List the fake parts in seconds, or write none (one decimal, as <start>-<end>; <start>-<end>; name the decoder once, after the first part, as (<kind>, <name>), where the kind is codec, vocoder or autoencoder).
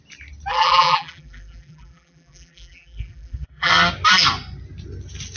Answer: 0.5-3.7 (vocoder, BigVGAN v2)